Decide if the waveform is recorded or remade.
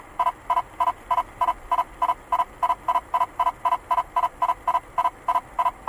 recorded